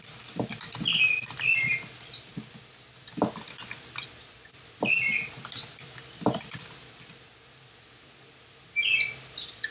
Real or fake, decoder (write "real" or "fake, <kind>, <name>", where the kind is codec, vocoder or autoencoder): real